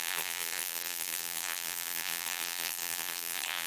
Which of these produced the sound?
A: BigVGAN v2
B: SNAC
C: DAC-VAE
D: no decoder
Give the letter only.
A